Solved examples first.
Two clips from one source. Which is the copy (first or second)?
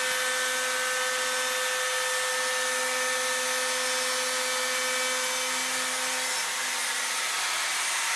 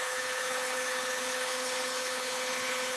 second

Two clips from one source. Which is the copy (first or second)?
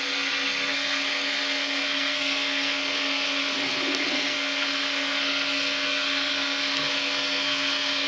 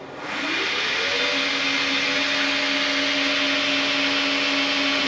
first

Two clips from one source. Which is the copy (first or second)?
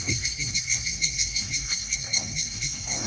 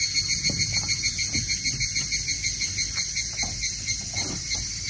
first